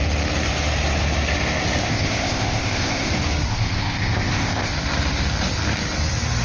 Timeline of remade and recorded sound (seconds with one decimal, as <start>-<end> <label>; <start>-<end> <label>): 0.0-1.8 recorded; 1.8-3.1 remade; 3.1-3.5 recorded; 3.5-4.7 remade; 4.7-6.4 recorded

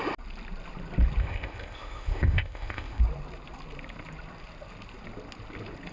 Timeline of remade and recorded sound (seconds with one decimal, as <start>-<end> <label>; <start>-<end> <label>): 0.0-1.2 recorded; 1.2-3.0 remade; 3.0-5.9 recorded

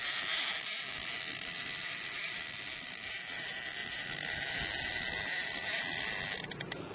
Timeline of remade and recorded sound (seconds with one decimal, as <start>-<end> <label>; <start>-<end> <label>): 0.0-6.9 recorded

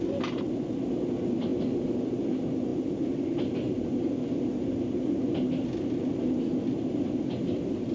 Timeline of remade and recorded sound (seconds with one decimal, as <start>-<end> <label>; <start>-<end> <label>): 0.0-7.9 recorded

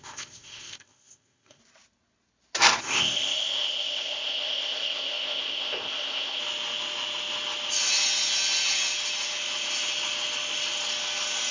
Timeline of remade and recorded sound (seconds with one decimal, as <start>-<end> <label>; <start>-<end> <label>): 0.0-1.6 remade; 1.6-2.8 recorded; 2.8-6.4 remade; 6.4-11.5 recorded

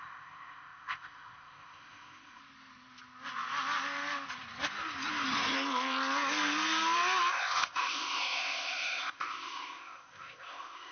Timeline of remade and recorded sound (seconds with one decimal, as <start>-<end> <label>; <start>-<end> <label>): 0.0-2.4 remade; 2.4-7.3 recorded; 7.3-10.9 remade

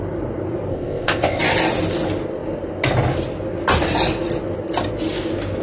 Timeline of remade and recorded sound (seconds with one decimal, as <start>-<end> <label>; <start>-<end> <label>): 0.0-0.7 recorded; 0.7-1.4 remade; 1.4-5.6 recorded